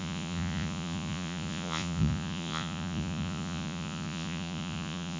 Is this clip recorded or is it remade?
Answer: remade